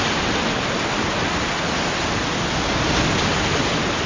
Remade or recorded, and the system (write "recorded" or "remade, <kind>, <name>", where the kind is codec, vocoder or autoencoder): recorded